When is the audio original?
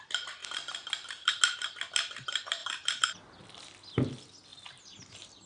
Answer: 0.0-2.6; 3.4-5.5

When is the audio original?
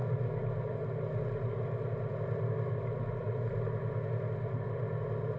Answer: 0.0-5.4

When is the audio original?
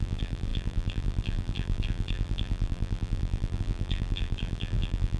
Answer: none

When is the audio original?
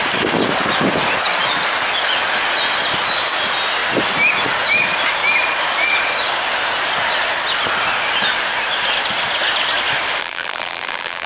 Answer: 0.0-10.2